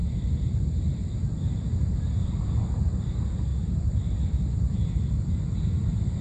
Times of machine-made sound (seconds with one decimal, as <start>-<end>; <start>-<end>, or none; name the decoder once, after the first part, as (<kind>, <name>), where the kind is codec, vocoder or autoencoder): 0.0-1.5 (vocoder, BigVGAN v2); 2.2-2.8; 3.5-5.1